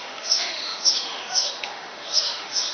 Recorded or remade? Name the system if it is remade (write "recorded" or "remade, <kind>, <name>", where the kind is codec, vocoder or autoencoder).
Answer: remade, autoencoder, DAC-VAE